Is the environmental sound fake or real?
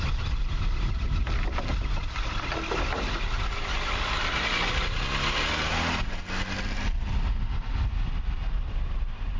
real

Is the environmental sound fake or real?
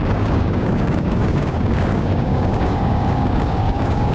fake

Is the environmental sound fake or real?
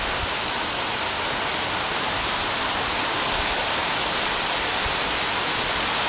real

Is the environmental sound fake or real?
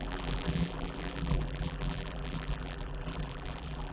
fake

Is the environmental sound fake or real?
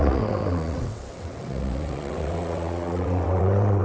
fake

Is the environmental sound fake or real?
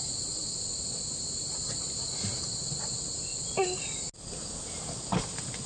real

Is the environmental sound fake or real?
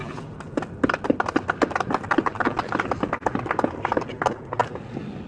real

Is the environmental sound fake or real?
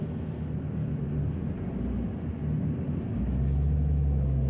real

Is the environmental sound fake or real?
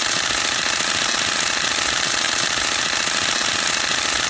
real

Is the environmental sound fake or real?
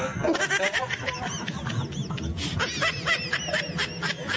real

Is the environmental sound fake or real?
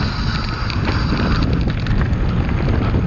real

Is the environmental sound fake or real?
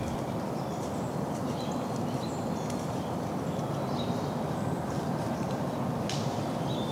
fake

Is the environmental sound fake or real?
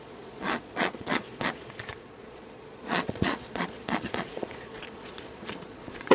fake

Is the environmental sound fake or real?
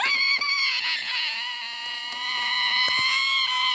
fake